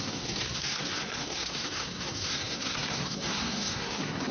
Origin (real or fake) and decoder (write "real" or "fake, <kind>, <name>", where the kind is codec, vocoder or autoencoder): fake, codec, SNAC